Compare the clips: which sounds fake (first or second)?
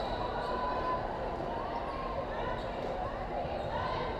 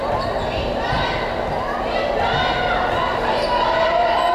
first